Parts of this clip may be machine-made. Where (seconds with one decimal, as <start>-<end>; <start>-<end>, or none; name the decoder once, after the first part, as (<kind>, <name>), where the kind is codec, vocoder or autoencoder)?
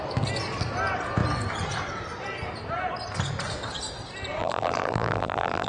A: 4.4-5.7 (vocoder, BigVGAN v2)